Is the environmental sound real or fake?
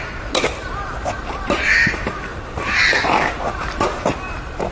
real